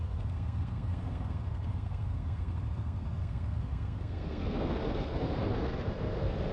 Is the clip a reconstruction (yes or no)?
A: yes